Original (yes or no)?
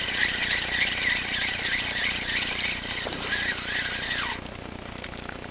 yes